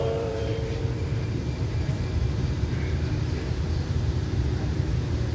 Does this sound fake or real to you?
fake